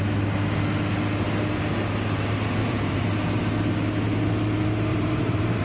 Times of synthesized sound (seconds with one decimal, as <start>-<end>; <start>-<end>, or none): 2.6-3.4; 4.9-5.6